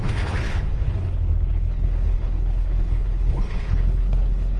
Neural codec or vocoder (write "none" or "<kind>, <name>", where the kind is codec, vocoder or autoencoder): codec, HILCodec